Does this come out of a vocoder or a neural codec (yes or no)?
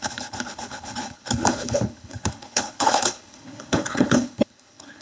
yes